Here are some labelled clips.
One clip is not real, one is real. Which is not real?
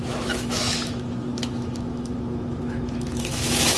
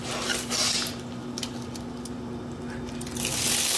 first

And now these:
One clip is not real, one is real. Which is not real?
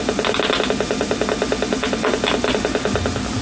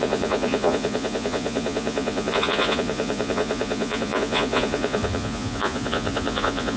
second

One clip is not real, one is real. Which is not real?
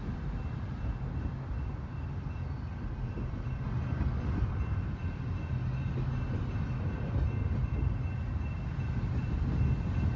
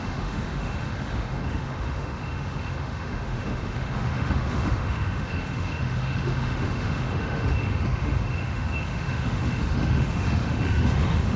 second